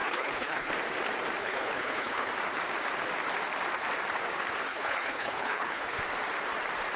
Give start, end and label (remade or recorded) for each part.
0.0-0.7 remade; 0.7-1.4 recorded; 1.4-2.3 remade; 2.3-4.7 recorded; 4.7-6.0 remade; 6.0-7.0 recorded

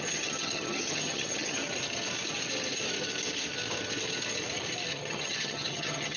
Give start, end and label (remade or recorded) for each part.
0.0-1.6 remade; 1.6-4.9 recorded; 4.9-6.2 remade

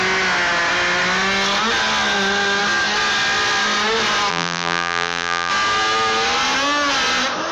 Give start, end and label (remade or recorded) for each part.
0.0-4.3 recorded; 4.3-5.5 remade; 5.5-7.5 recorded